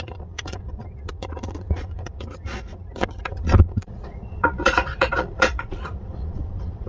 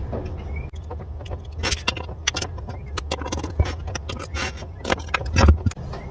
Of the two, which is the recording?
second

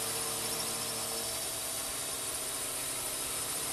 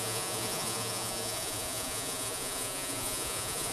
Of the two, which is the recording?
first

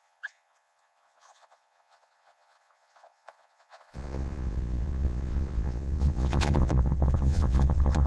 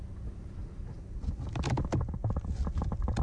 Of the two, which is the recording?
second